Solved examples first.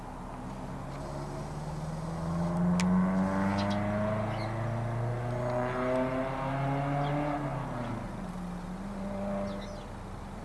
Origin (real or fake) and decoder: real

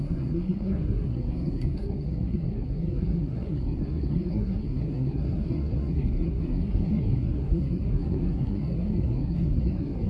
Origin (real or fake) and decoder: fake, codec, SNAC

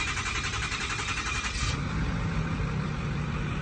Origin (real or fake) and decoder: real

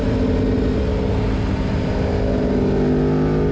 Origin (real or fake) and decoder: real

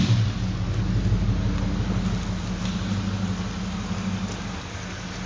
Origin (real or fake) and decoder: real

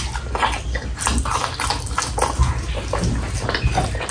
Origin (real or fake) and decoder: real